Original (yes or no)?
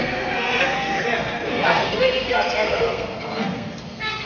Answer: no